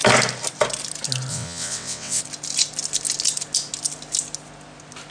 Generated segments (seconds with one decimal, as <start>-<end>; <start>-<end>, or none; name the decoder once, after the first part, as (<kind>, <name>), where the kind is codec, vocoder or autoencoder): 1.3-2.2 (vocoder, WaveNeXt)